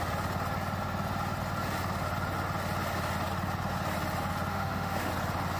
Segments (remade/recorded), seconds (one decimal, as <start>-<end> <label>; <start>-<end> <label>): 0.0-4.5 recorded; 4.5-5.1 remade; 5.1-5.6 recorded